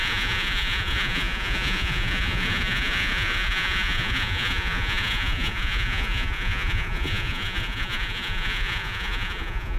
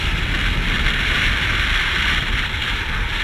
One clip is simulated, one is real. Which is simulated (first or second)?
first